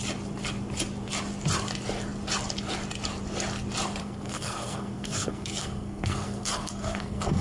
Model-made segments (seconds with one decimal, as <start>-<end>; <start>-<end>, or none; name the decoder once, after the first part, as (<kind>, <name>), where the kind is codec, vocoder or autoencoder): 4.0-7.4 (codec, SNAC)